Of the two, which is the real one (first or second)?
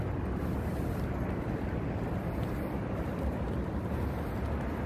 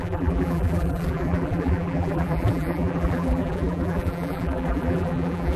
first